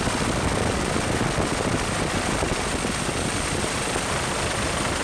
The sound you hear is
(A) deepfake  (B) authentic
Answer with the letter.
B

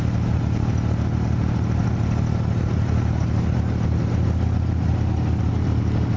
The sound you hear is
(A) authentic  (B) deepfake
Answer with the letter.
A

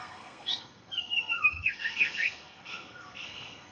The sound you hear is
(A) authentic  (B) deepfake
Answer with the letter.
B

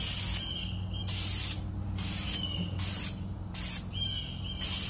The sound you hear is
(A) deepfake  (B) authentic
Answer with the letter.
B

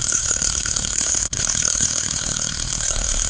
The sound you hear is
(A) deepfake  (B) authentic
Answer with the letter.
A